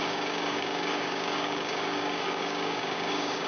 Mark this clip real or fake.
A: fake